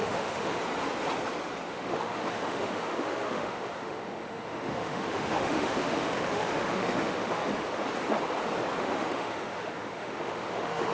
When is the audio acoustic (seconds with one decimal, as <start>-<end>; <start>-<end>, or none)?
0.6-1.7; 7.4-8.8